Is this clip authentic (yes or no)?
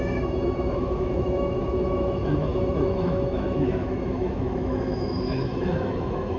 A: no